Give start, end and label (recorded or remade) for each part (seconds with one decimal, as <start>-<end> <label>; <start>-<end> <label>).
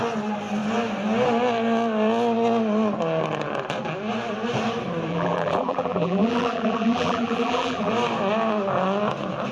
0.0-5.1 recorded; 5.1-7.9 remade; 7.9-9.5 recorded